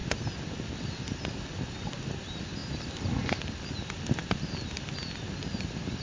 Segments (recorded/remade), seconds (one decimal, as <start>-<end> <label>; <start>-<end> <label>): 0.0-6.0 recorded